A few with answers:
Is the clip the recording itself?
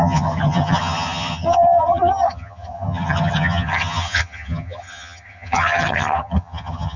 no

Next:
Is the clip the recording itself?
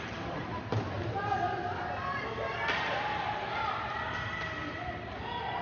yes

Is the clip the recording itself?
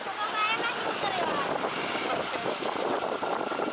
yes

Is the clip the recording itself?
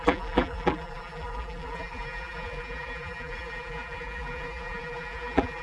no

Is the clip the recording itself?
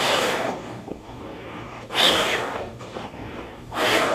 no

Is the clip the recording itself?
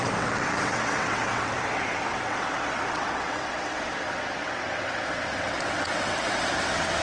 no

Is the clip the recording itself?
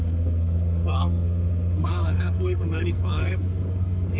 no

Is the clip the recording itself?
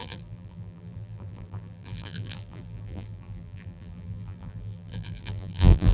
no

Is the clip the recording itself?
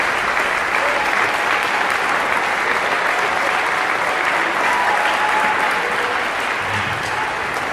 yes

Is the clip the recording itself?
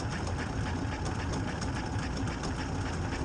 no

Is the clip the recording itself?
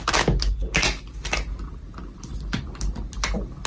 yes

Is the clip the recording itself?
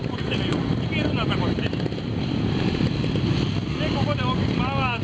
yes